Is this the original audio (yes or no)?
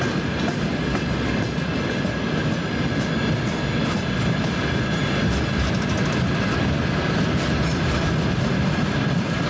yes